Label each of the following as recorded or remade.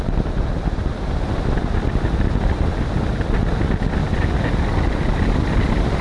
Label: recorded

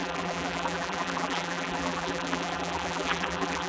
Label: remade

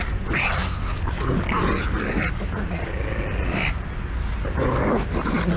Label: recorded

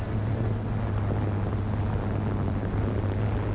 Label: recorded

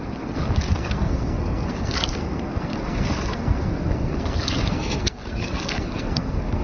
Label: remade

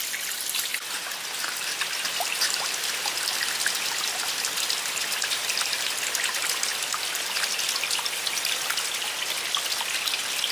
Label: recorded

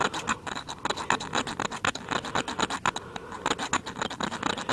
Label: recorded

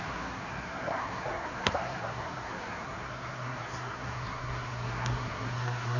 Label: remade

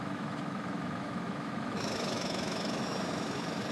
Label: remade